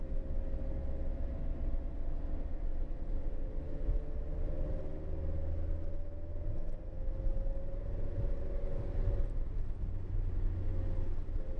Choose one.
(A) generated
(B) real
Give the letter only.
B